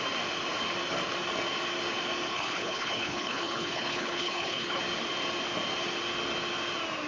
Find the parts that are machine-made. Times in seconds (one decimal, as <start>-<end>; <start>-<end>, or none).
2.3-4.8